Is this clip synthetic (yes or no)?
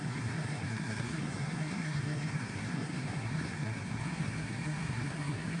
yes